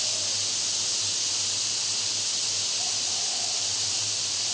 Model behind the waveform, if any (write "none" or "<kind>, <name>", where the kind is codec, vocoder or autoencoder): none